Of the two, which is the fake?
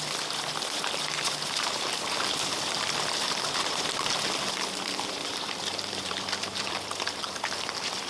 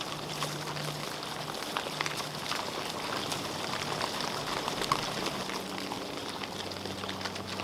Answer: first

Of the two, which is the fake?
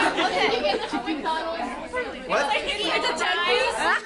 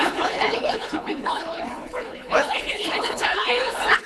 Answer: second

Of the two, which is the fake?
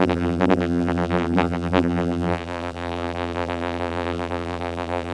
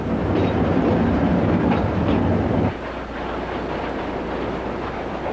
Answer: first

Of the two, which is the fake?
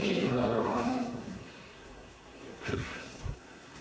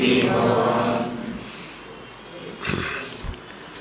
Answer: first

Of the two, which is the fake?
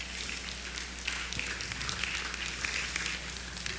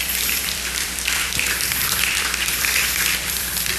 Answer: second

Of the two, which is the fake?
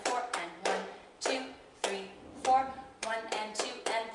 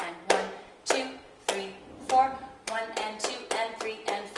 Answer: first